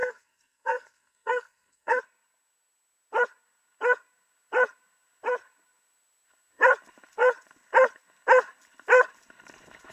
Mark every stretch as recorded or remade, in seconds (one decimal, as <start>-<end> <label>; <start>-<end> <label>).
0.0-2.0 remade; 2.0-9.9 recorded